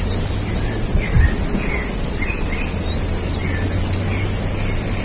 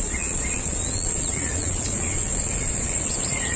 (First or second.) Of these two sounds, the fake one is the second